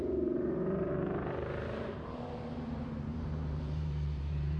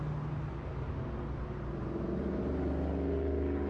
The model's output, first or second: first